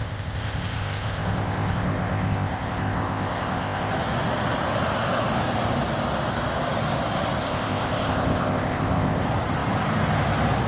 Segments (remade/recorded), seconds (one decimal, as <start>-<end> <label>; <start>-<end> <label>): 0.0-3.9 remade; 3.9-7.4 recorded; 7.4-9.2 remade; 9.2-10.7 recorded

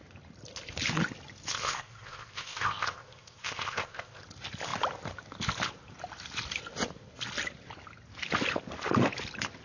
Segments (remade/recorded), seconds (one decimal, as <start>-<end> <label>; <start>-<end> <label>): 0.0-1.5 recorded; 1.5-4.2 remade; 4.2-9.6 recorded